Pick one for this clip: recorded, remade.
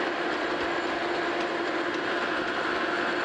recorded